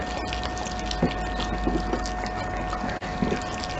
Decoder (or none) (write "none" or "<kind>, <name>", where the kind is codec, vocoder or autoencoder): none